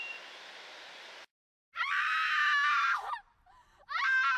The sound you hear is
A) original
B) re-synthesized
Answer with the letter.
A